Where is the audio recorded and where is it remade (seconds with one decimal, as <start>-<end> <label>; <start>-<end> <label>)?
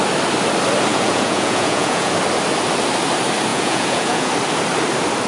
0.0-0.9 recorded; 0.9-2.1 remade; 2.1-3.5 recorded; 3.5-4.3 remade; 4.3-5.3 recorded